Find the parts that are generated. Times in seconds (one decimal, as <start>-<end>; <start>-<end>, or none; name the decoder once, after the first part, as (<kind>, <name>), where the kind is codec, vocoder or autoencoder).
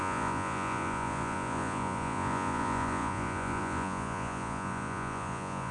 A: 0.0-5.7 (vocoder, Vocos)